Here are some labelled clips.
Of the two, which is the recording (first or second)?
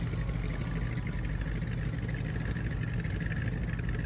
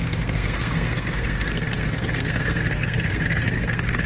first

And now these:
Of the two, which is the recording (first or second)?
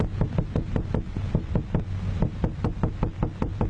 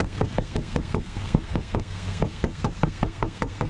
first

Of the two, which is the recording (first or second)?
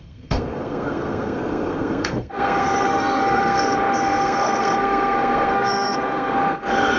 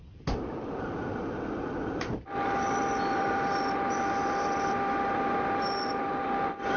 second